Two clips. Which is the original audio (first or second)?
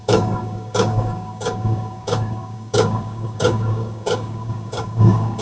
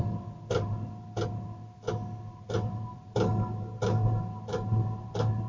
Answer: second